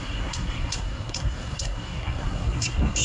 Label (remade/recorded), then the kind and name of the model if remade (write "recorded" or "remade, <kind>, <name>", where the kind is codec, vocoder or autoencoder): remade, codec, SNAC